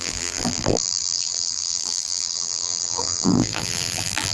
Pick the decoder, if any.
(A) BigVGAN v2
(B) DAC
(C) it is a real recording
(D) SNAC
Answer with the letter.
A